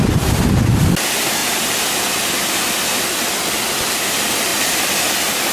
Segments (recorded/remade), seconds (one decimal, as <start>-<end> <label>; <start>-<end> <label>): 0.0-5.5 recorded